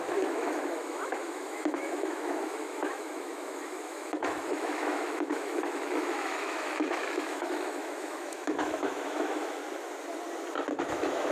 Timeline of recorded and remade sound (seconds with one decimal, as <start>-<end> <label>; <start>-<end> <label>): 0.0-9.6 remade; 9.6-10.9 recorded; 10.9-11.3 remade